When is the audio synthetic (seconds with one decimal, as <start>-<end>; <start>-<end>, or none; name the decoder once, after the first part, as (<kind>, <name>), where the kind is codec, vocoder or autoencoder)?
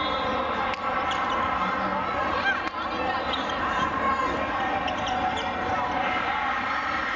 none